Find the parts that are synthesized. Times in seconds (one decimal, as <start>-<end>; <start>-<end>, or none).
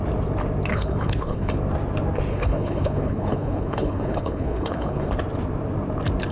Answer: 0.7-1.5; 2.3-5.1